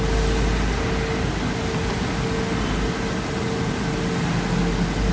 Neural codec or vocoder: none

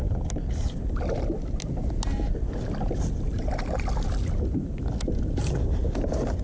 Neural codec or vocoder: none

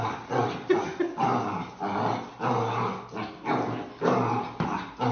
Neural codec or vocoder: none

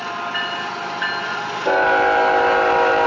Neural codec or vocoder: none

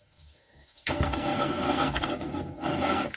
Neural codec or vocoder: codec, SNAC